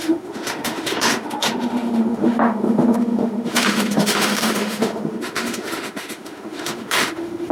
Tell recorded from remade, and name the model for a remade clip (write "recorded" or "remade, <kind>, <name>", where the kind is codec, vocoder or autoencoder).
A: remade, autoencoder, DAC-VAE